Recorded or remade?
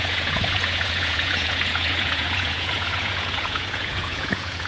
remade